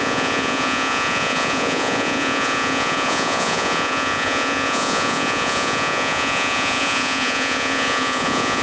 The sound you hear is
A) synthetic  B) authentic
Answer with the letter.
A